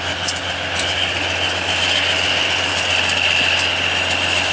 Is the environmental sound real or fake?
real